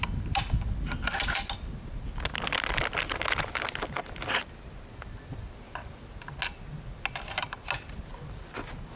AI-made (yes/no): no